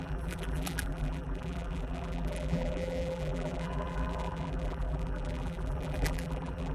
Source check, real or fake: fake